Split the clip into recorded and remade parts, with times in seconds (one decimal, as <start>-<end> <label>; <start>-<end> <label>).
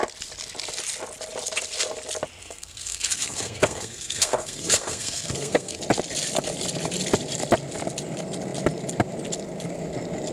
0.0-2.4 recorded; 2.4-5.8 remade; 5.8-10.3 recorded